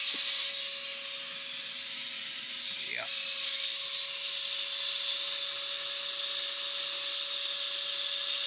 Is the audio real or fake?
real